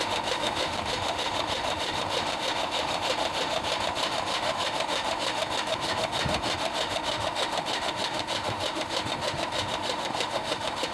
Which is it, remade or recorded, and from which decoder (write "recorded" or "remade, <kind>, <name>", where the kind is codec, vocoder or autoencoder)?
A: remade, autoencoder, DAC-VAE